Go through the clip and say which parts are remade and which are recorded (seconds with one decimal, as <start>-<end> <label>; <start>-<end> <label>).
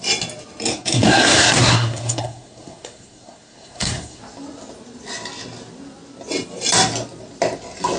0.0-0.7 recorded; 0.7-4.2 remade; 4.2-8.0 recorded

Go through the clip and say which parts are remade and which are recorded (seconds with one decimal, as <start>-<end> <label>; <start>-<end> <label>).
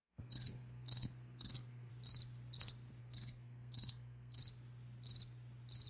0.0-1.9 remade; 1.9-3.0 recorded; 3.0-4.4 remade; 4.4-5.9 recorded